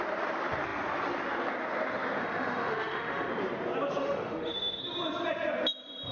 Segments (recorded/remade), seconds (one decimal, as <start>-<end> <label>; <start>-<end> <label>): 0.0-2.2 recorded; 2.2-3.3 remade; 3.3-4.0 recorded; 4.0-4.8 remade; 4.8-6.1 recorded